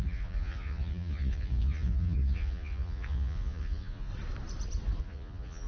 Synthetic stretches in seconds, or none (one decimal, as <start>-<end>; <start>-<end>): 0.0-4.1; 5.0-5.7